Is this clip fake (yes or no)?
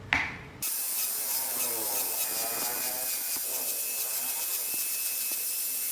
no